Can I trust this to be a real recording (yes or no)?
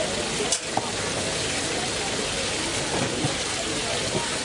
yes